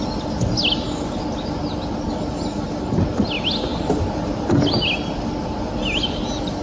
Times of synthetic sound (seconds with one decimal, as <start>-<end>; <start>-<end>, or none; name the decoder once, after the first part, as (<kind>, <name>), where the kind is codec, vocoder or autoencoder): none